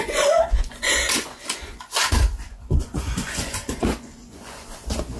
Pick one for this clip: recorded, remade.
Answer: remade